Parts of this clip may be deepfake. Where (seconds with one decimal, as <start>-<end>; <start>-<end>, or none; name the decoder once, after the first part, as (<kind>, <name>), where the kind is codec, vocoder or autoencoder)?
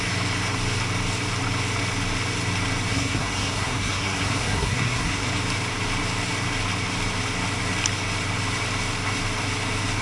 2.9-5.3 (codec, SNAC)